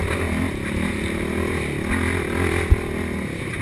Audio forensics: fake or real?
real